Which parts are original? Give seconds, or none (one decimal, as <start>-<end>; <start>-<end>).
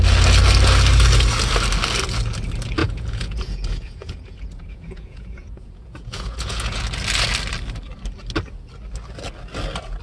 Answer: 0.0-2.8; 6.8-10.0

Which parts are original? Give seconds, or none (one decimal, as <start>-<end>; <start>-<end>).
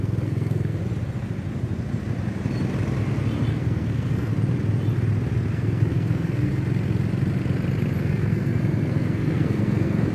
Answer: 0.8-3.5; 4.3-5.5; 6.5-8.0